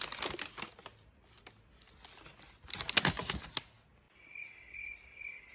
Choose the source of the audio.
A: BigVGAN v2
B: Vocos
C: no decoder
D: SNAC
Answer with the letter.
C